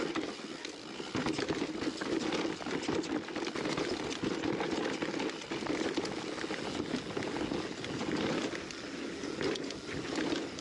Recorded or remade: recorded